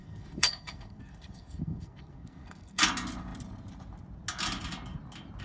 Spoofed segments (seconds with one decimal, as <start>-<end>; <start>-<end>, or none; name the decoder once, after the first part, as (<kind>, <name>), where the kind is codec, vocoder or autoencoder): 0.0-2.8 (codec, SNAC)